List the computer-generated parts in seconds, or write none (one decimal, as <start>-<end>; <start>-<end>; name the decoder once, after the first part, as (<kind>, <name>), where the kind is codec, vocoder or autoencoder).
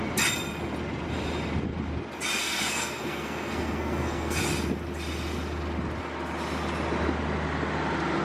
2.4-4.4 (codec, SNAC)